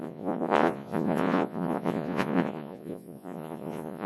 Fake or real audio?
fake